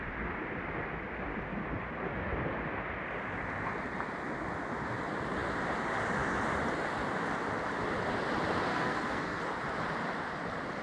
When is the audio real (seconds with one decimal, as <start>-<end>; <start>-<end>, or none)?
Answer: 0.0-8.7; 9.4-10.8